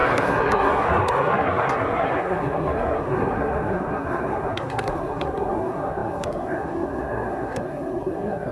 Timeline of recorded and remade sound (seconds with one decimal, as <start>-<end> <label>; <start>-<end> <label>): 0.0-8.5 remade